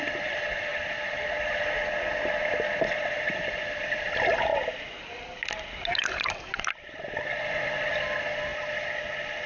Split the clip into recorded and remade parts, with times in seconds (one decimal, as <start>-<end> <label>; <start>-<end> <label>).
0.0-4.5 remade; 4.5-6.3 recorded; 6.3-9.5 remade